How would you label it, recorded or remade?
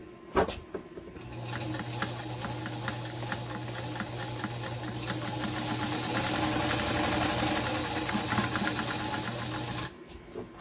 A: recorded